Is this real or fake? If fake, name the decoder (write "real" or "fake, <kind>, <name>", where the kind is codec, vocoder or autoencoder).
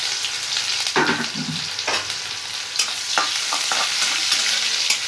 real